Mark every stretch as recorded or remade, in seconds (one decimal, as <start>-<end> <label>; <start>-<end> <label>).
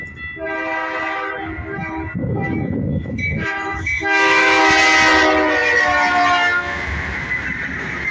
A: 0.0-2.2 recorded; 2.2-4.6 remade; 4.6-8.1 recorded